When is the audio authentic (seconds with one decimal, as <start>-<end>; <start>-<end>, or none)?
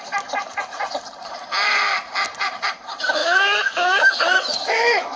0.0-3.2